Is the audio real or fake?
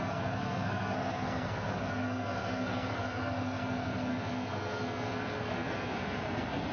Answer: fake